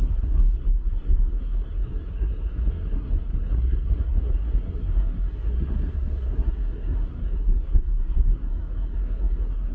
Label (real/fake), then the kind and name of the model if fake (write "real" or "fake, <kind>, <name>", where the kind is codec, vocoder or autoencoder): fake, codec, SNAC